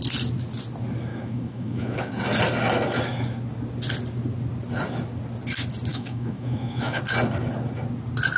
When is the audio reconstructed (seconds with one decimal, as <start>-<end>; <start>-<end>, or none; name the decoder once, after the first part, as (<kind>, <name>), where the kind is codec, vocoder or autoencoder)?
1.1-2.1 (autoencoder, DAC-VAE); 5.9-7.0